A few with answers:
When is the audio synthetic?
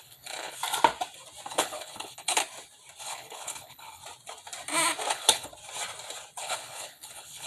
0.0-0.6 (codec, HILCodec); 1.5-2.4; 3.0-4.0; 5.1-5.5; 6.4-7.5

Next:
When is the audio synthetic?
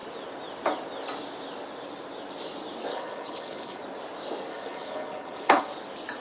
2.9-3.8 (codec, HILCodec); 4.5-5.6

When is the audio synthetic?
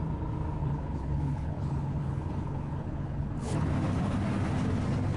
0.6-3.7 (codec, HILCodec)